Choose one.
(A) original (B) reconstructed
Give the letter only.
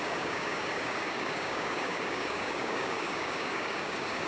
B